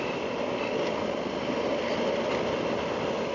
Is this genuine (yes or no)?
yes